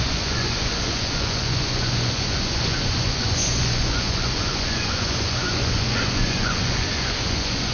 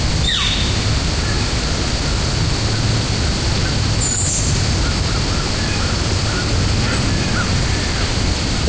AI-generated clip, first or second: first